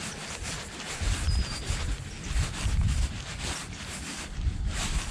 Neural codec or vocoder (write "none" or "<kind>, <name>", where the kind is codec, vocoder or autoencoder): none